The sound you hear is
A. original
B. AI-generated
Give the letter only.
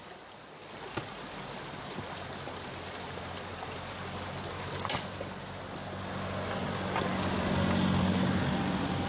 A